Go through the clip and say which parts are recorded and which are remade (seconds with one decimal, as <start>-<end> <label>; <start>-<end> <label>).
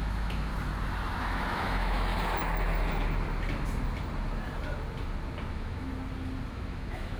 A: 0.0-0.5 remade; 0.5-1.2 recorded; 1.2-2.1 remade; 2.1-5.5 recorded; 5.5-5.9 remade; 5.9-6.5 recorded; 6.5-7.2 remade